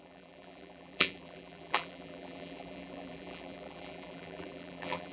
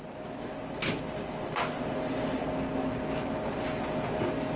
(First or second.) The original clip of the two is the second